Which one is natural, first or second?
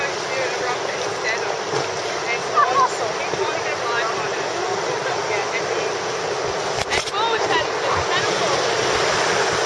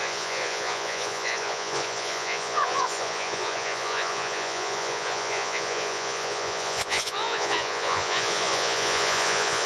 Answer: first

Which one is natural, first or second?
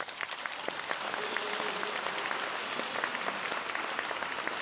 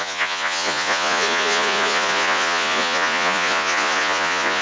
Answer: first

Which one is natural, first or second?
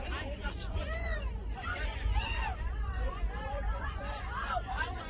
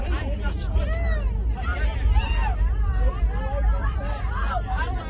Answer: second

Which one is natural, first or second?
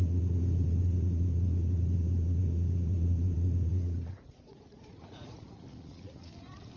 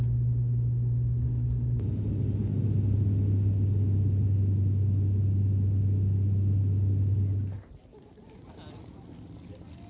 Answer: second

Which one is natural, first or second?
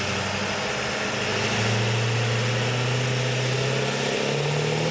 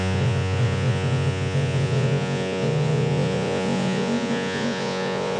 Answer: first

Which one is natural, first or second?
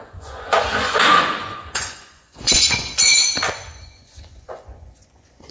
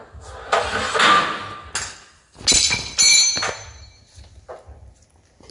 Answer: second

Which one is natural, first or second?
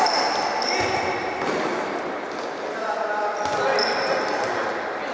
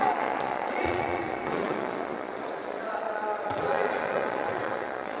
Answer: first